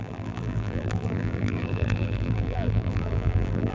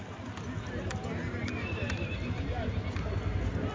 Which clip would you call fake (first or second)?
first